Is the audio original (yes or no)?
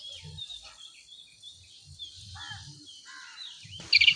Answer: yes